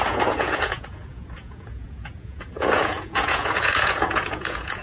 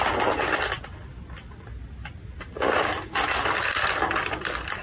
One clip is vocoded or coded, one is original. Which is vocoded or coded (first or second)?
first